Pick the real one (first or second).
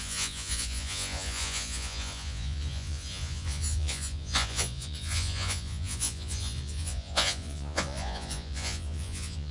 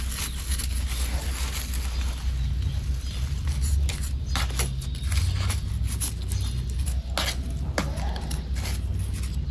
second